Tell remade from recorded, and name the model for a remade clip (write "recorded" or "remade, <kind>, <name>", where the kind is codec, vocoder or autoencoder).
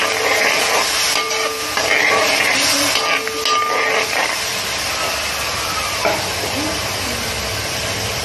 recorded